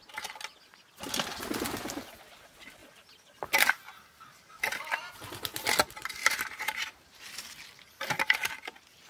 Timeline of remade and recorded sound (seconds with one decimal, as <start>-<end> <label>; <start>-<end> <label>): 0.0-2.8 recorded; 2.8-3.7 remade; 3.7-6.2 recorded; 6.2-7.3 remade; 7.3-9.1 recorded